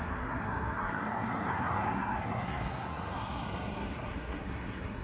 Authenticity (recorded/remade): remade